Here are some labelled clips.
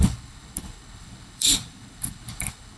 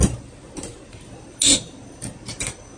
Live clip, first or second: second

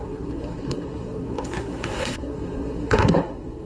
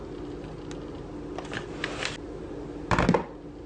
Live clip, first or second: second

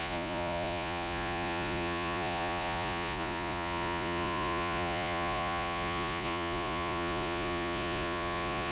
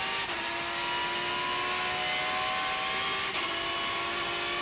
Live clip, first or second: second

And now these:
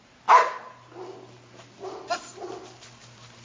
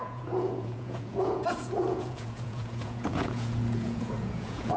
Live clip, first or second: first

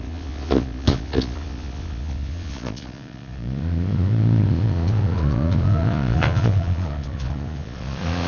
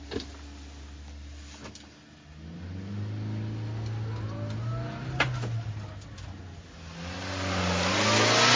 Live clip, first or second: second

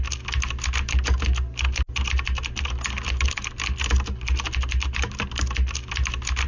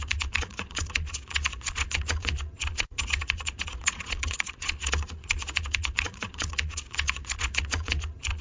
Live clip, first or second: first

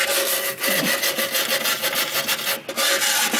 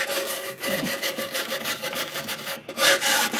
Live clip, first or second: first